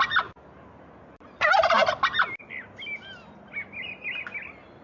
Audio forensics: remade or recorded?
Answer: recorded